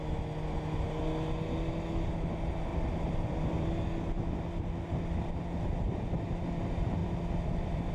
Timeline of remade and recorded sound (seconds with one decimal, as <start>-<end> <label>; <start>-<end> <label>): 0.0-2.7 recorded; 2.7-3.4 remade; 3.4-7.0 recorded; 7.0-7.9 remade